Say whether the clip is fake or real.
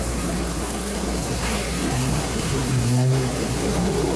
fake